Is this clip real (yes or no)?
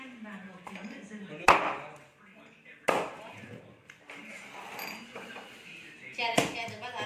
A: yes